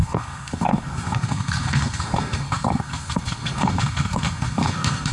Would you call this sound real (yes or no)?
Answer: no